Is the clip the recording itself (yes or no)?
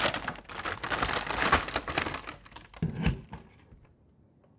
yes